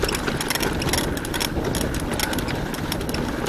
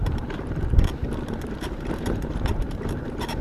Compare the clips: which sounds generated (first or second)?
second